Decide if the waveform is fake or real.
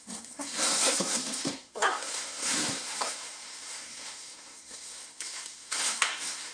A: fake